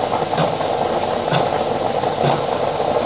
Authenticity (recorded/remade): recorded